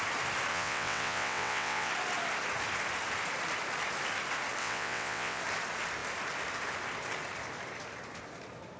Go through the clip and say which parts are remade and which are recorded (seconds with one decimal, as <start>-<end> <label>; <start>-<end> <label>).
0.0-0.5 recorded; 0.5-1.9 remade; 1.9-4.6 recorded; 4.6-5.4 remade; 5.4-8.8 recorded